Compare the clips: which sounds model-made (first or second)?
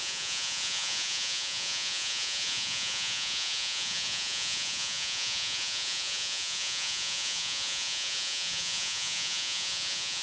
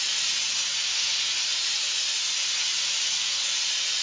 first